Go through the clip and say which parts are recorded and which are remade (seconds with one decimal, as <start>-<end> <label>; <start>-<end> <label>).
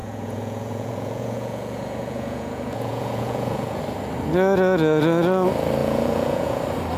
0.0-3.8 remade; 3.8-5.8 recorded; 5.8-6.6 remade; 6.6-7.0 recorded